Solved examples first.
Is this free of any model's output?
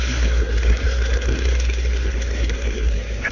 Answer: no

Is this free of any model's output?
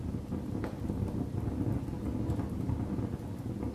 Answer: yes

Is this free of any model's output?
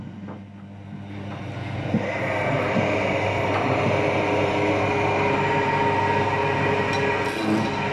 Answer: yes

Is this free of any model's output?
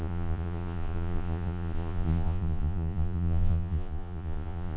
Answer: no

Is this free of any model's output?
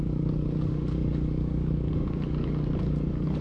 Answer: no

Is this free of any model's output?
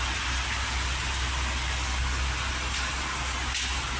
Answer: yes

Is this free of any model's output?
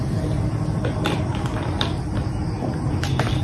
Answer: yes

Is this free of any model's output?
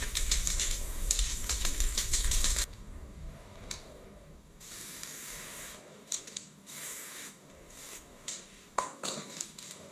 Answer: no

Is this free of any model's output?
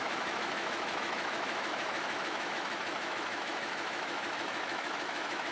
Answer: no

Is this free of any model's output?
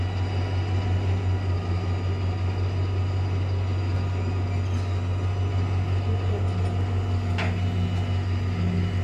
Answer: yes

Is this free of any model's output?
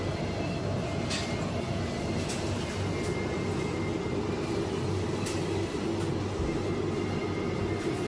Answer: yes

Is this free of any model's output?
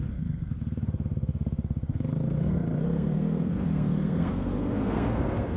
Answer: no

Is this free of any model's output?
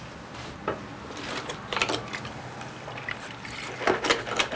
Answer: yes